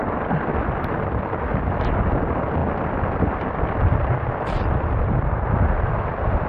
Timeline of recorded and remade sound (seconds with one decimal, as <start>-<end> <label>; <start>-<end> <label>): 0.0-6.5 recorded